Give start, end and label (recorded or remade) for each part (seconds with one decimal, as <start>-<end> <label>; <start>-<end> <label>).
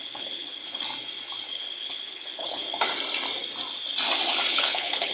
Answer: 0.0-0.6 remade; 0.6-1.5 recorded; 1.5-2.6 remade; 2.6-4.5 recorded; 4.5-5.1 remade